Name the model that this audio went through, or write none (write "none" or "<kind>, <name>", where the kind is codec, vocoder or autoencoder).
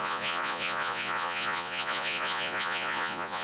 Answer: vocoder, Vocos